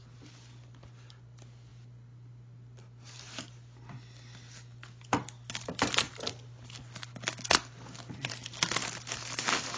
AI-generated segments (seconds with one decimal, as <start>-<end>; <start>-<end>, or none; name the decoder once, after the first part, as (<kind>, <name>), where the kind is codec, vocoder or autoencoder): none